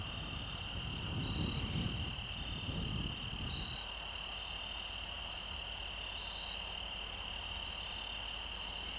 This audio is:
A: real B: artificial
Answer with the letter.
A